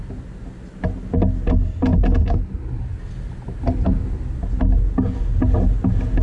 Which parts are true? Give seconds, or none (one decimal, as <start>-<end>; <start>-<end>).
0.0-6.2